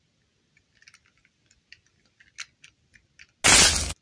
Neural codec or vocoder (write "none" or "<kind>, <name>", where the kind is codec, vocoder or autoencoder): none